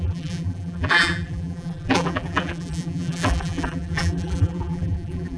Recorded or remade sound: remade